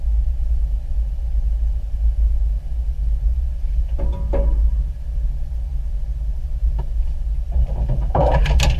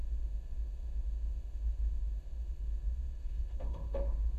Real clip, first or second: first